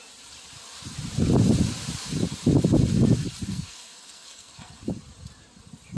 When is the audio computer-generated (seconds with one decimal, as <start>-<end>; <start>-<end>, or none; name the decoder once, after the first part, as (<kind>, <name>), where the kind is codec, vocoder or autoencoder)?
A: 3.5-4.8 (codec, SNAC)